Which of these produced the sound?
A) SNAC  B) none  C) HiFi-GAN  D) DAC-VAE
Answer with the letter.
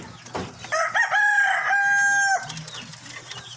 B